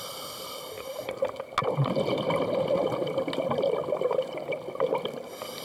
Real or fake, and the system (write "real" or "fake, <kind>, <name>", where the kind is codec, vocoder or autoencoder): real